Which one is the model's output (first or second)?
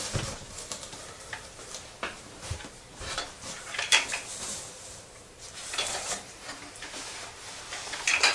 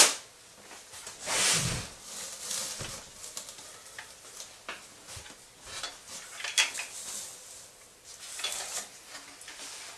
first